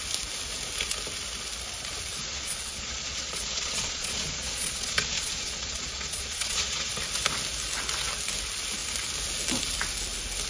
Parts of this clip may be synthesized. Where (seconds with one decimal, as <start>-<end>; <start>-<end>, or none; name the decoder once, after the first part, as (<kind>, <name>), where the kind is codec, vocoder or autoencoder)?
2.2-6.9 (vocoder, Vocos)

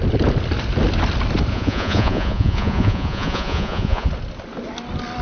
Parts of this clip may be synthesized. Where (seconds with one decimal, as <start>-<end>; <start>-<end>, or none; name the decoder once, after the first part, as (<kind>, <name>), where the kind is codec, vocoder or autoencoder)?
1.5-4.1 (vocoder, Vocos)

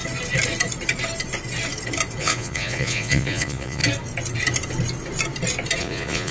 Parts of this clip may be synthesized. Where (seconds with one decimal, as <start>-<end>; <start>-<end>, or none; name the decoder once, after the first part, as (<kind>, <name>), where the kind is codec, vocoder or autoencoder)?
2.2-3.8 (vocoder, Vocos); 5.8-6.3